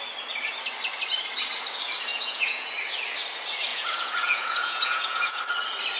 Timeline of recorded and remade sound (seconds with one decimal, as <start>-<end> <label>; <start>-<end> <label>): 0.0-2.1 recorded; 2.1-2.7 remade; 2.7-3.7 recorded; 3.7-5.4 remade; 5.4-6.0 recorded